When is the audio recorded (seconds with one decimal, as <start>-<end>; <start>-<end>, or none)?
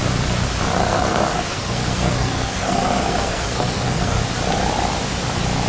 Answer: 0.0-0.8; 4.2-5.7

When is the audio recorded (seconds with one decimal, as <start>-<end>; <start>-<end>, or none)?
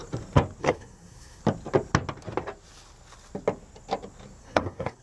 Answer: 0.0-0.6; 1.4-4.4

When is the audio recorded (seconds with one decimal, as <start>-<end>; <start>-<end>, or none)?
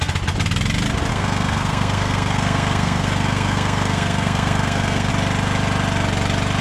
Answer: 0.0-1.1; 5.1-6.6